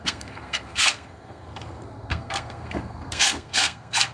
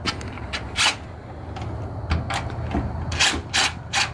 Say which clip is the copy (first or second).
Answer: first